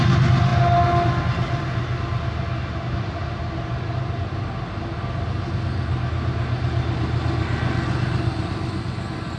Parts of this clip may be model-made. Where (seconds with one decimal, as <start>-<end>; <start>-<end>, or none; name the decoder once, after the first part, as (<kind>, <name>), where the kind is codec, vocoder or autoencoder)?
none